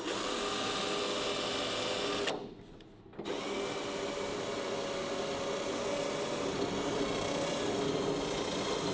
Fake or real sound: real